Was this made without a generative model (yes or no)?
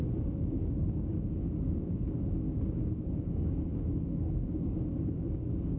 no